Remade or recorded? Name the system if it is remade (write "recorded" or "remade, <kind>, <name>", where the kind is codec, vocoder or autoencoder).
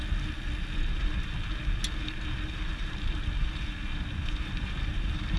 recorded